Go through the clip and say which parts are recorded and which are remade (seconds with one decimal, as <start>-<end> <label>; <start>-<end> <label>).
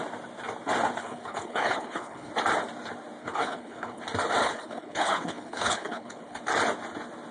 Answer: 0.0-1.0 recorded; 1.0-2.3 remade; 2.3-3.2 recorded; 3.2-4.0 remade; 4.0-4.4 recorded; 4.4-6.4 remade; 6.4-7.3 recorded